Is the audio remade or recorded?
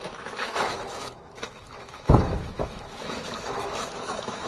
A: remade